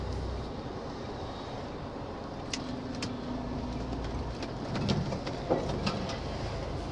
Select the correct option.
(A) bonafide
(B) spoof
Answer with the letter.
A